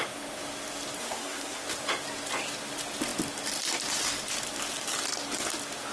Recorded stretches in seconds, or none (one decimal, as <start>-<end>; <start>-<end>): 0.0-1.0; 1.6-5.9

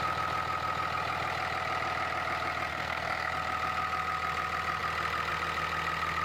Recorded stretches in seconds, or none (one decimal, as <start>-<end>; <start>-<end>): 0.0-2.7; 3.3-6.2